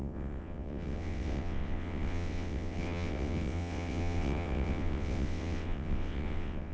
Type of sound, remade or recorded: remade